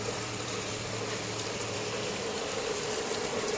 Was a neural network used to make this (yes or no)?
yes